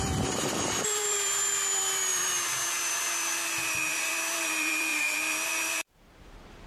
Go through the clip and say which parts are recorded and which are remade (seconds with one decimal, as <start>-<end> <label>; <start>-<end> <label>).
0.0-6.7 remade